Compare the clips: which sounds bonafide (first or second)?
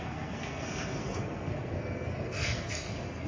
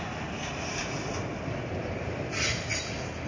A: second